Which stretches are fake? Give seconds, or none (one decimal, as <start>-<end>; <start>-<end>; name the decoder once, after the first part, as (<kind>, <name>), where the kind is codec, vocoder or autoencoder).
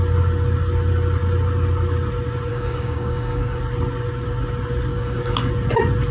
2.5-3.6 (codec, DAC); 4.9-5.5